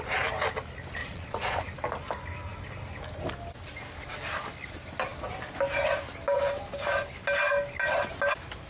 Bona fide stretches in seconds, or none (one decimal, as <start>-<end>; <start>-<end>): 0.0-1.0; 1.6-8.7